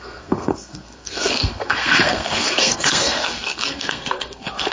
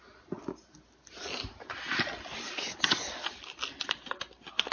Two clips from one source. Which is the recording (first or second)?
second